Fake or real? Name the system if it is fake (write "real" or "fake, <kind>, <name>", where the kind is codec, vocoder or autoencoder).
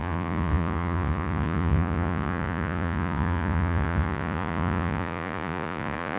fake, vocoder, Vocos